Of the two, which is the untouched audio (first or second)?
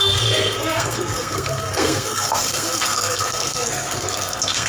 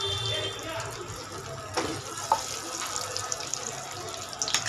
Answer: second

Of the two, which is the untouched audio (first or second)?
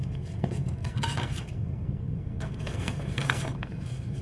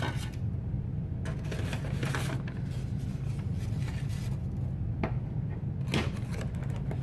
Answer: second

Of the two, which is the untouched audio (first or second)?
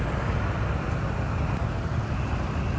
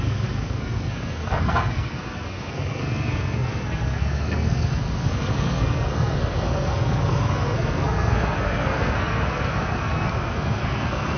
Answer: first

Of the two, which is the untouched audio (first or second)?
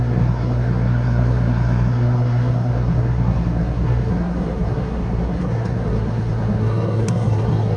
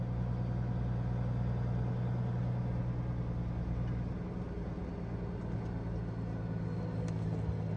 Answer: second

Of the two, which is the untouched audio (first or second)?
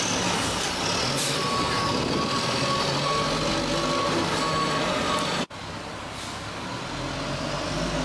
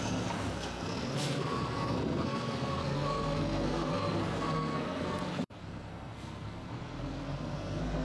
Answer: first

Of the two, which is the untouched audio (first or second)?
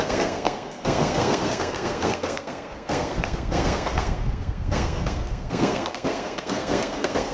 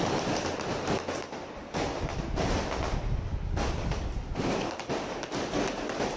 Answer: second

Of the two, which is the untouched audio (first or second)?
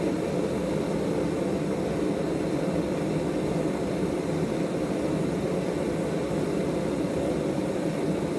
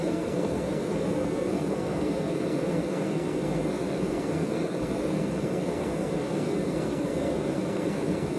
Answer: first